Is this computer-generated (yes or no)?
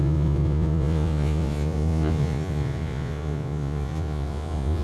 yes